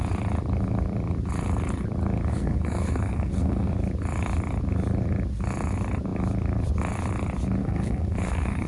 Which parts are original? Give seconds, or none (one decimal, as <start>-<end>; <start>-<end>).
0.0-2.3; 3.7-7.6

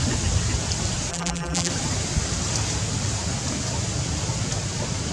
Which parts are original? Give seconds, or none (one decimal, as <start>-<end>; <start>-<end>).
0.0-1.1; 1.7-5.1

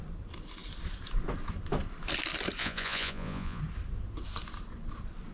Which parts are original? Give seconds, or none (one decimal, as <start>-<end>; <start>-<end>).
0.0-2.6; 3.6-5.3

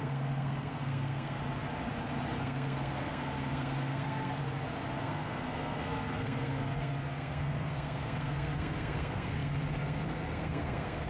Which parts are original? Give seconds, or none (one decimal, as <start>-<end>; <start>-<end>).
1.4-2.4; 4.4-5.0